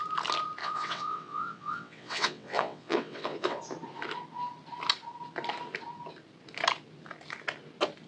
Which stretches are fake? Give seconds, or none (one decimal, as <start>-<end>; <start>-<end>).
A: 0.6-3.6